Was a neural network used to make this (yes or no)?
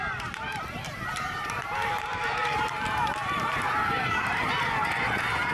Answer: yes